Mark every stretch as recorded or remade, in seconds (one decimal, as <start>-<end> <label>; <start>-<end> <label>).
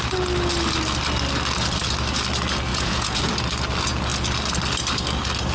0.0-2.7 recorded; 2.7-3.2 remade; 3.2-5.5 recorded